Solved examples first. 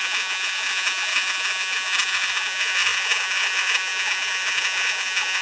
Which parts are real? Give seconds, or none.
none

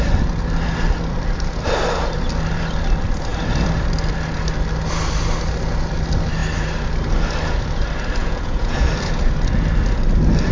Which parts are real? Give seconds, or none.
0.0-8.2; 8.9-10.5

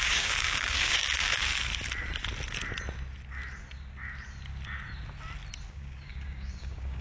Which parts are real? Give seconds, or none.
1.5-5.7